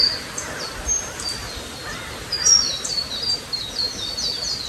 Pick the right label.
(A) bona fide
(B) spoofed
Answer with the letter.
A